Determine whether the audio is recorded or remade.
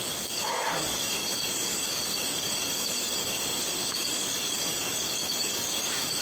remade